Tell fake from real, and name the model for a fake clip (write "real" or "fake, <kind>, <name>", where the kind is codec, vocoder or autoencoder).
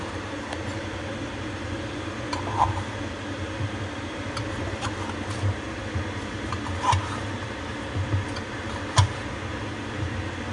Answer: fake, vocoder, BigVGAN v2